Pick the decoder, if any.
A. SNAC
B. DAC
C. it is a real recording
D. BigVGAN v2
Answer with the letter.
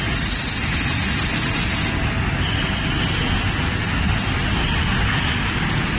C